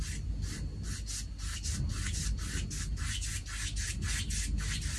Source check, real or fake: real